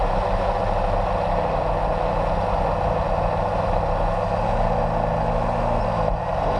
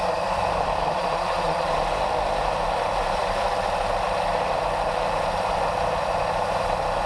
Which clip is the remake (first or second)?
second